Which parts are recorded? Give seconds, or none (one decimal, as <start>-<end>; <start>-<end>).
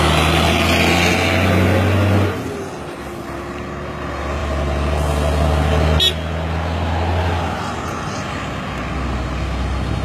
0.0-10.0